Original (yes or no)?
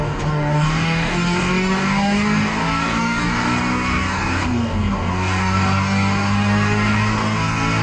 no